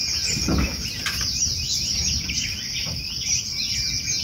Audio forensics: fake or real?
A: real